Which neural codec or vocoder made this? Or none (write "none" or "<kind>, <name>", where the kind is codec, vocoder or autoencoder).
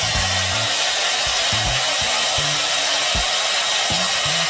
none